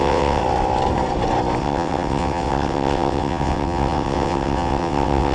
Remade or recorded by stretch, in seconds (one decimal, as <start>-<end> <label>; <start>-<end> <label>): 0.0-0.4 remade; 0.4-1.6 recorded; 1.6-5.3 remade